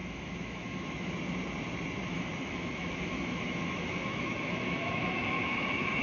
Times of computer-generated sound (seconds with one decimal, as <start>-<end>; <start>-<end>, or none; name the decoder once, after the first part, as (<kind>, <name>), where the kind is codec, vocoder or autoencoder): 0.0-1.1 (autoencoder, DAC-VAE); 2.1-6.0